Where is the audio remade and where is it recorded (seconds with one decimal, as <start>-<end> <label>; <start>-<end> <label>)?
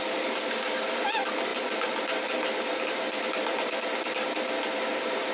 0.0-5.3 recorded